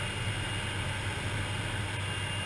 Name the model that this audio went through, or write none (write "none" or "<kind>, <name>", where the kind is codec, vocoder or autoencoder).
none